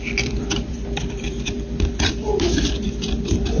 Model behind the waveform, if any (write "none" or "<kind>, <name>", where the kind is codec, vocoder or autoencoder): vocoder, BigVGAN v2